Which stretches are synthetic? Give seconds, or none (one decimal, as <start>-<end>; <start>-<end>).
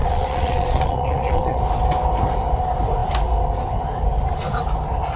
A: 0.0-1.6